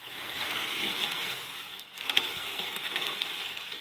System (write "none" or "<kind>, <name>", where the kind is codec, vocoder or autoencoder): codec, SNAC